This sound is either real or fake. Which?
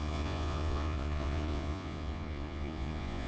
fake